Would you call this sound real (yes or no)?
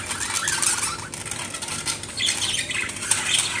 yes